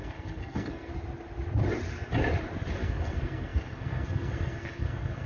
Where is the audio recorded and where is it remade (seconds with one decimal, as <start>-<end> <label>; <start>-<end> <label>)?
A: 0.0-0.9 remade; 0.9-2.7 recorded; 2.7-5.3 remade